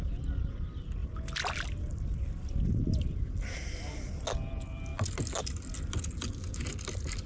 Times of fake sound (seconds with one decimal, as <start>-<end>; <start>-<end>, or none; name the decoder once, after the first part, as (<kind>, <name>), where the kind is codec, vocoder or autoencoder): none